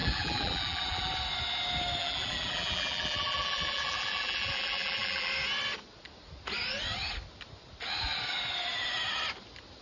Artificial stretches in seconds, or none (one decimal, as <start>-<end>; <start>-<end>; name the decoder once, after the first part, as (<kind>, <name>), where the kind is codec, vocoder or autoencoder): 0.0-1.1 (vocoder, BigVGAN v2); 2.0-5.3